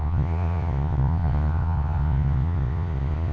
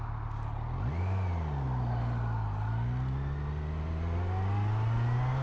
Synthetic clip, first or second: first